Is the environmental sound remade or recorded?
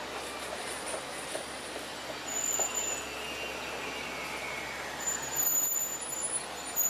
recorded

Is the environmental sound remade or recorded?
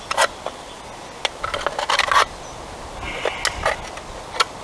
recorded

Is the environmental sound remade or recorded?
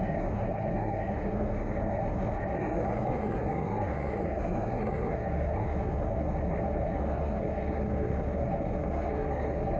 remade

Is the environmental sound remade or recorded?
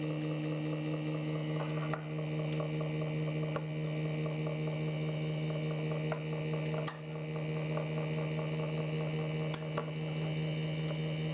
recorded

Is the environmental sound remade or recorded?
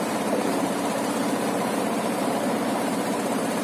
remade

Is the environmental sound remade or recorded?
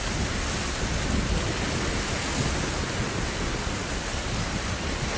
recorded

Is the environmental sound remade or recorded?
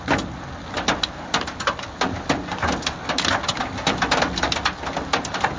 recorded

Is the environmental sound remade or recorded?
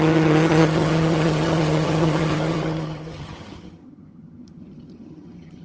remade